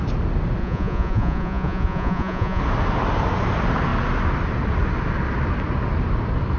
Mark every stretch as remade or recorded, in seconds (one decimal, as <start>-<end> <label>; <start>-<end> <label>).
0.0-0.6 recorded; 0.6-2.6 remade; 2.6-6.6 recorded